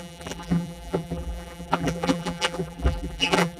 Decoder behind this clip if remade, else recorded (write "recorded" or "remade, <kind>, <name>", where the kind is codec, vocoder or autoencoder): remade, vocoder, BigVGAN v2